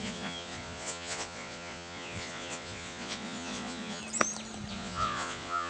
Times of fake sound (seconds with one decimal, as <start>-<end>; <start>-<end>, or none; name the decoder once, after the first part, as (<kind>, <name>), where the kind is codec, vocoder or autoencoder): 0.0-4.0 (vocoder, Vocos); 4.7-5.7